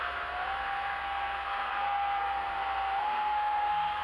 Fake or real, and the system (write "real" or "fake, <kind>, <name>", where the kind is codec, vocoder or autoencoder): fake, codec, SNAC